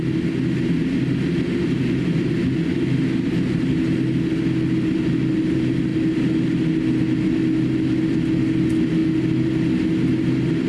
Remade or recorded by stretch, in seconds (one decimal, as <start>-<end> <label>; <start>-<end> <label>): 0.0-10.7 recorded